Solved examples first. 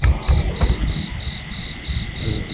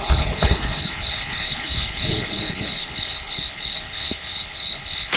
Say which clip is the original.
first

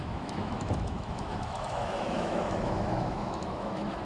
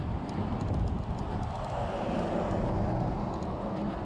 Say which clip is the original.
second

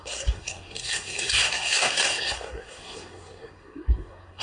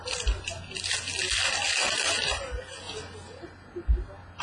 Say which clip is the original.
second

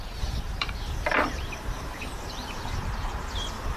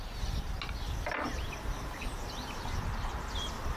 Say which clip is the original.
second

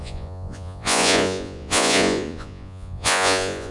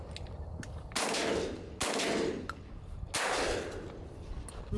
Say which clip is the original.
second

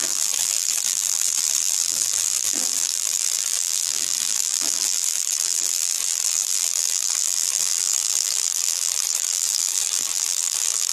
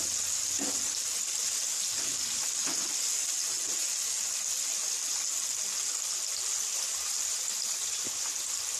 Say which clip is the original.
second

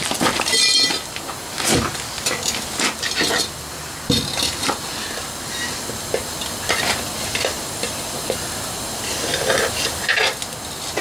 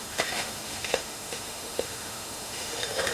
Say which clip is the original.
first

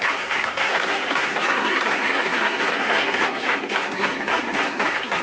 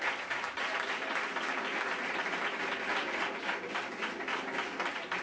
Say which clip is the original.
second